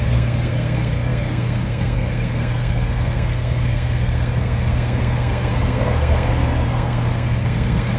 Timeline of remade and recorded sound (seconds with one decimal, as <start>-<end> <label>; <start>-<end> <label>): 0.0-8.0 remade